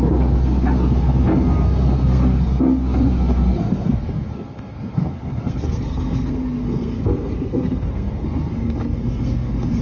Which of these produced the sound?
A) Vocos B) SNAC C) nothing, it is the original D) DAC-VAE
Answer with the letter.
B